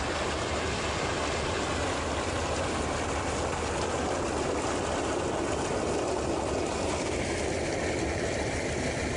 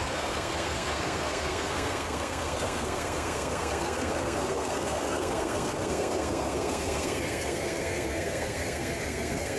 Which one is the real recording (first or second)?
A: first